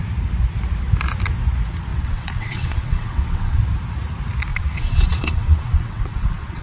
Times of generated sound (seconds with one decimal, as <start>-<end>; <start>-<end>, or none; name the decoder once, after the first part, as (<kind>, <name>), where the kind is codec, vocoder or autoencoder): 1.9-3.6 (vocoder, WaveNeXt); 4.5-6.6